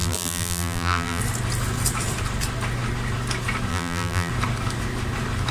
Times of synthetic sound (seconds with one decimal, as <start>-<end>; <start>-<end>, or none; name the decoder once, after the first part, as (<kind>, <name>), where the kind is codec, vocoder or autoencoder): 0.0-1.2 (vocoder, BigVGAN v2); 3.7-4.3